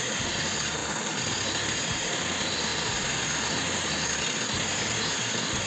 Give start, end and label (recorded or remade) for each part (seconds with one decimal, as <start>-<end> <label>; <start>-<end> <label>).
0.0-5.7 recorded